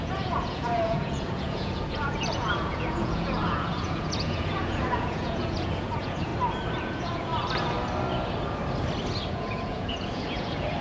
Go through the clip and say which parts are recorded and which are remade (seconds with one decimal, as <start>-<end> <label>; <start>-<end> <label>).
0.0-6.3 remade; 6.3-6.8 recorded; 6.8-7.3 remade; 7.3-9.3 recorded; 9.3-10.8 remade